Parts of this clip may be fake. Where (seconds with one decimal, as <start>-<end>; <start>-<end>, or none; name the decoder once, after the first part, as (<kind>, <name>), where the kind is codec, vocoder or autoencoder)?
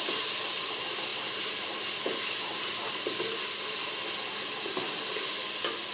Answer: none